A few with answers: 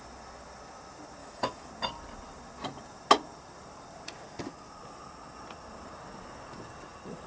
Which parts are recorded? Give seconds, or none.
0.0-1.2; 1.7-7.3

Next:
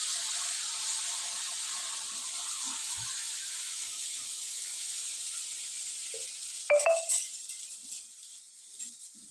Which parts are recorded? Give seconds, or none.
0.0-2.8; 5.0-9.3

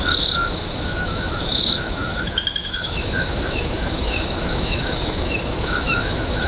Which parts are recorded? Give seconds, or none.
none

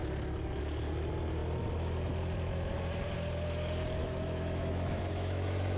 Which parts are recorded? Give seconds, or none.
0.0-4.0

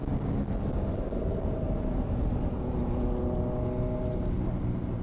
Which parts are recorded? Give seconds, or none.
0.0-5.0

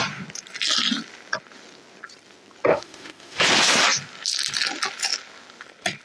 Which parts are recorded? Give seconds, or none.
0.0-2.7; 3.4-6.0